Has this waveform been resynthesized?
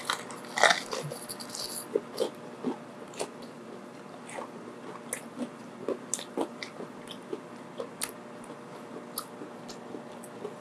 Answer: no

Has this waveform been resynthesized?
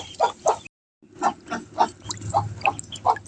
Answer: no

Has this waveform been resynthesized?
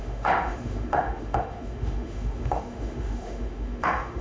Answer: yes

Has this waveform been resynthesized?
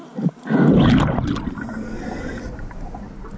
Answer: no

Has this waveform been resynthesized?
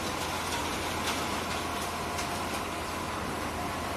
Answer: no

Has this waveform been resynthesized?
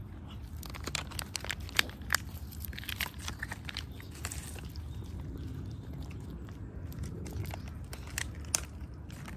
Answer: no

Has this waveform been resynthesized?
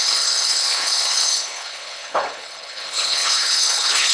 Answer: yes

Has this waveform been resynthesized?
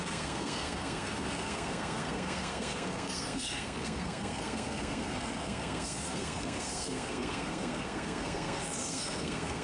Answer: yes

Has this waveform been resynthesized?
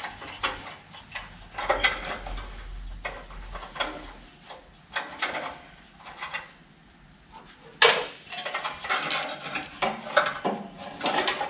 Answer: no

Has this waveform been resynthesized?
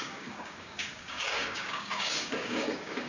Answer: yes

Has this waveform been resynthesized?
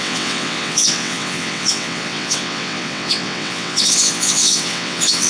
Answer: yes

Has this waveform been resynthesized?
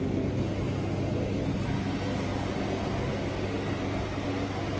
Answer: no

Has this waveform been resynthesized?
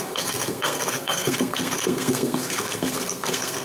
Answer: yes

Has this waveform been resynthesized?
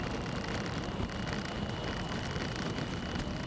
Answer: no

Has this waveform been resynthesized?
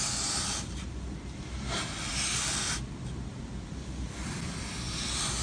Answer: no